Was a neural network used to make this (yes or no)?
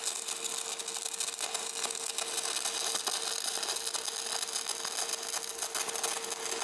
no